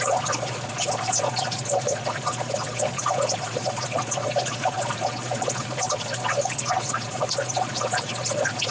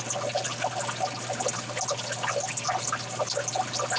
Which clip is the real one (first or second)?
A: second